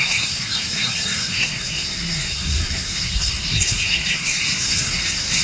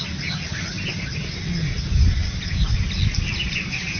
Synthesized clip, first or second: first